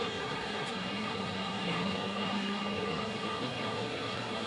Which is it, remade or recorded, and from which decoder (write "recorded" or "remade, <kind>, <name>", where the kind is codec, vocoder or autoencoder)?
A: remade, codec, SNAC